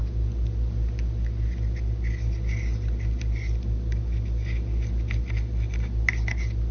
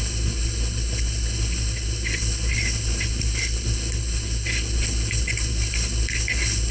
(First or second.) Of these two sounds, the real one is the first